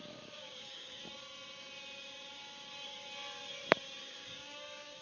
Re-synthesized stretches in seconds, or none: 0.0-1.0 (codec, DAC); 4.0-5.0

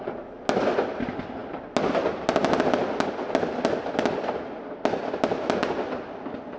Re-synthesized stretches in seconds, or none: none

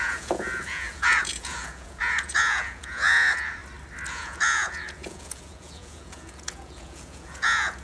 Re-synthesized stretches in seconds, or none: 0.0-3.6 (vocoder, Vocos); 4.1-7.8

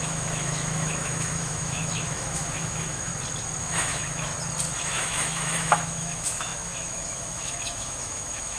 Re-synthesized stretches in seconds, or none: 0.0-3.1 (autoencoder, DAC-VAE); 3.6-4.3; 4.8-8.6